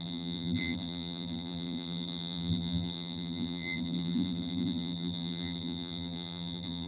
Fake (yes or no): yes